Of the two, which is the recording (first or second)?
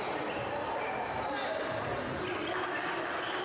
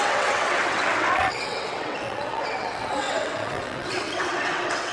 first